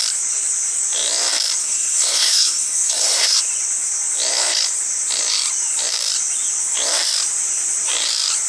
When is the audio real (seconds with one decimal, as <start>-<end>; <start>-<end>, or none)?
0.0-1.6; 3.4-8.5

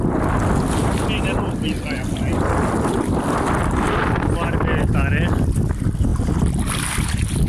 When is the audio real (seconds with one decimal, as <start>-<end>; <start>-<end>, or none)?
0.0-7.5

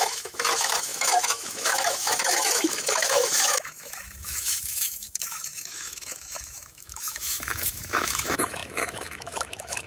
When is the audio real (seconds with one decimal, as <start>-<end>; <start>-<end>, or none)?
none

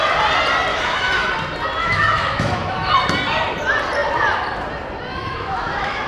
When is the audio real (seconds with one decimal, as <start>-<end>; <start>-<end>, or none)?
0.0-0.7; 1.3-1.8; 2.9-5.1